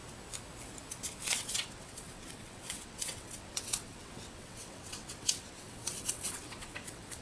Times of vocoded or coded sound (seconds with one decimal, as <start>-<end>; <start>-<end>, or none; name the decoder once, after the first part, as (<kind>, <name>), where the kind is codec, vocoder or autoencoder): 1.2-7.2 (vocoder, WaveNeXt)